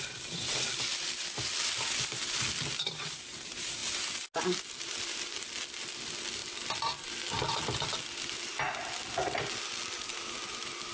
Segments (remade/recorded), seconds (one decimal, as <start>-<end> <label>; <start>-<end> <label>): 0.0-3.8 remade; 3.8-4.4 recorded; 4.4-6.4 remade; 6.4-10.3 recorded; 10.3-10.9 remade